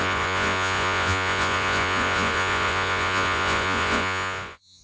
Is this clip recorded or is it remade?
remade